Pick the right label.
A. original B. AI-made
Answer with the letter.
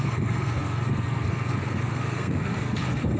B